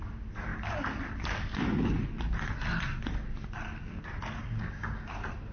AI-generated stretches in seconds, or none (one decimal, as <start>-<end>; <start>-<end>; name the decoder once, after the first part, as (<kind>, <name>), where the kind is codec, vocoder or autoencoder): 4.4-5.1 (codec, DAC)